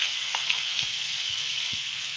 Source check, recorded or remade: remade